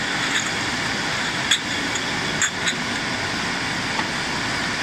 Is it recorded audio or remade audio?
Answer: recorded